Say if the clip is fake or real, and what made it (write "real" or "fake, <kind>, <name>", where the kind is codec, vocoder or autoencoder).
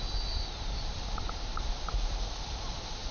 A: real